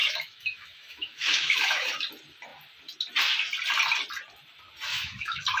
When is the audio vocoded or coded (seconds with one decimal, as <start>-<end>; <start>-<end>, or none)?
0.0-1.9; 4.9-5.6